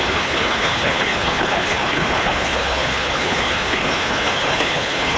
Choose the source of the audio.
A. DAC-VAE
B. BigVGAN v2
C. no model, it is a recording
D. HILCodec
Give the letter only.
D